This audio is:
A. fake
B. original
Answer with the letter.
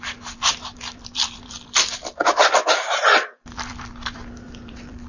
A